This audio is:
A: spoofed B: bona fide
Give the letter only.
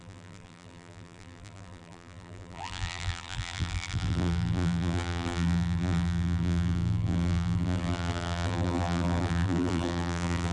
A